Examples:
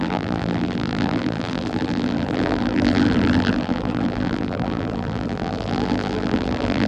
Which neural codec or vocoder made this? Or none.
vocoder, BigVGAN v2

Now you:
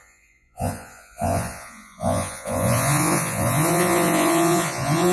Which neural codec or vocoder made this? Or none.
vocoder, Vocos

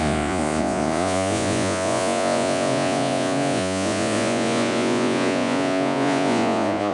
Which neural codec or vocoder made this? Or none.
vocoder, Vocos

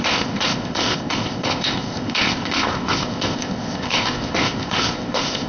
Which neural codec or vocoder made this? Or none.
codec, ZipCodec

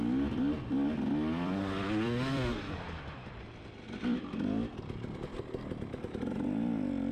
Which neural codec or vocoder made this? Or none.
vocoder, BigVGAN v2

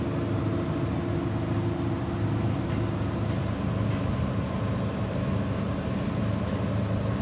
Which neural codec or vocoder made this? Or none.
none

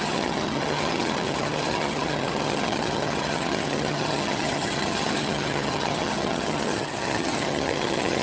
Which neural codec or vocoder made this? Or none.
vocoder, HiFi-GAN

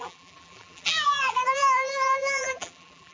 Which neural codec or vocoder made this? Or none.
vocoder, BigVGAN v2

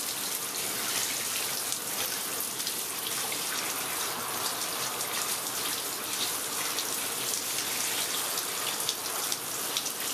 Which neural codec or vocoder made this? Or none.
none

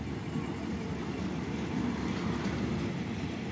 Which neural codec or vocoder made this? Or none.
none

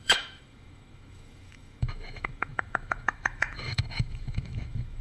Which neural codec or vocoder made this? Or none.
autoencoder, DAC-VAE